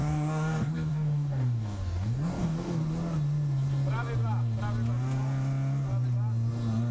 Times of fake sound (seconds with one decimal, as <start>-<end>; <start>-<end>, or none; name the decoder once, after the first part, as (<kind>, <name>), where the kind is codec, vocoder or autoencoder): 0.0-2.8 (codec, DAC)